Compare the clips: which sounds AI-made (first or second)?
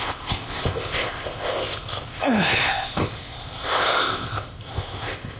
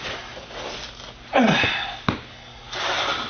first